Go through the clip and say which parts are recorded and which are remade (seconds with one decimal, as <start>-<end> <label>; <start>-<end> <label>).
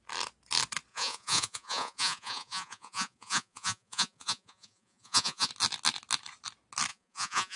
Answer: 0.0-0.9 recorded; 0.9-5.5 remade; 5.5-6.9 recorded; 6.9-7.6 remade